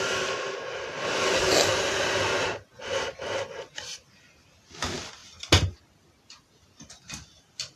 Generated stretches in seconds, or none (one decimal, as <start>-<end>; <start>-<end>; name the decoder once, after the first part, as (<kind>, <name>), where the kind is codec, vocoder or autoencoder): none